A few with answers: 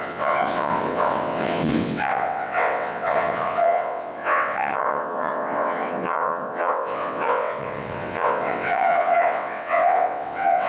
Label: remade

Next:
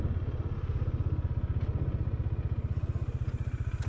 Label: recorded